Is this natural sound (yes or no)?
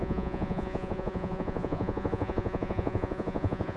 no